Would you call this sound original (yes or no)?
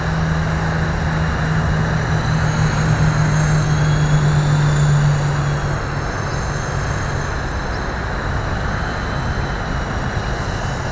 yes